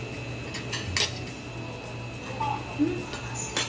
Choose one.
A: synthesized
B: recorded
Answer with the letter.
B